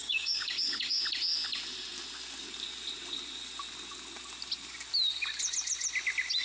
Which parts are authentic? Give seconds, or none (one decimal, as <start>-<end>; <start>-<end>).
1.0-6.4